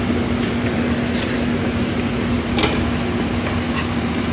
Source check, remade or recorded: recorded